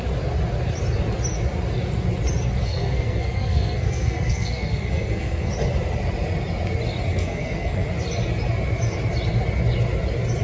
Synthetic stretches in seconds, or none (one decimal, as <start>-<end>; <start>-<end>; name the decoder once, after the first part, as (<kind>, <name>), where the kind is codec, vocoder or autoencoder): 2.6-5.5 (codec, SNAC); 7.1-7.9